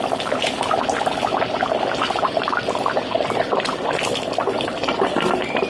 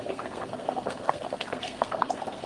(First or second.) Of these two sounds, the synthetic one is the second